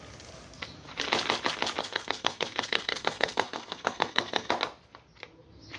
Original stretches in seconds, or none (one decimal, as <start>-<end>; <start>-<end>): 0.0-1.8; 4.5-5.8